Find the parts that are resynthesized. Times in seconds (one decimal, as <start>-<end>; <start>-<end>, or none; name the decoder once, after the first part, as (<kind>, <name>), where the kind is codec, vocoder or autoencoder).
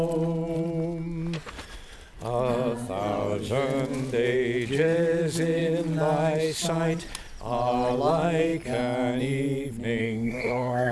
10.0-10.9 (codec, SNAC)